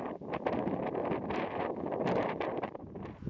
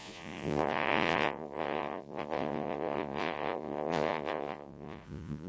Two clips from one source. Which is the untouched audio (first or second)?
first